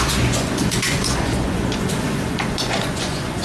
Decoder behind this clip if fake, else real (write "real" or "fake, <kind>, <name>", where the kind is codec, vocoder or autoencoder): fake, vocoder, Vocos